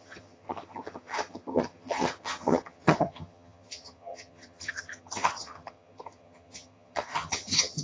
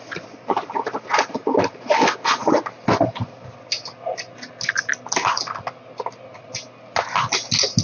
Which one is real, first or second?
second